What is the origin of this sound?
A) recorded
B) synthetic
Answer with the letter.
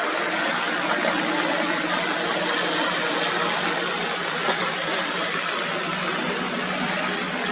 A